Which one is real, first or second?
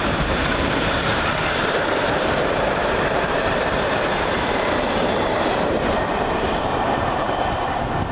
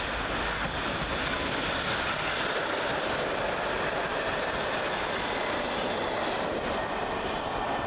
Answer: second